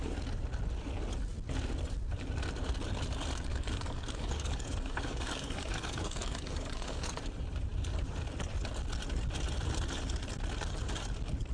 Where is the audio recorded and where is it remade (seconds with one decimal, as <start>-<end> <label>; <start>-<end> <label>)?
0.0-3.5 recorded; 3.5-7.2 remade; 7.2-11.5 recorded